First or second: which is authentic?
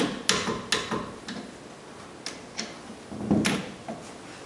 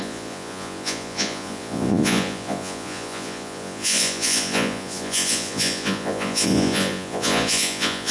first